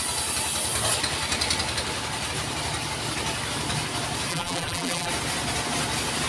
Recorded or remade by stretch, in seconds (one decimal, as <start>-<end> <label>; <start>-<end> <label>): 0.0-4.3 recorded; 4.3-5.1 remade; 5.1-6.3 recorded